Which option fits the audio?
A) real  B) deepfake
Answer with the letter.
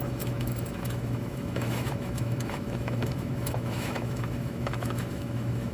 B